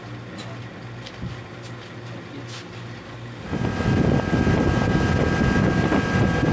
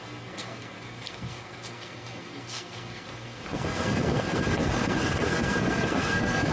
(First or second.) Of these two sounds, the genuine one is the first